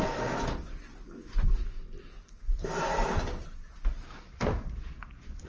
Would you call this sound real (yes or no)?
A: yes